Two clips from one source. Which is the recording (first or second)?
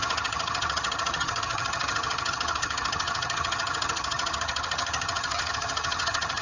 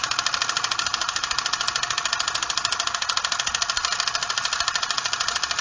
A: second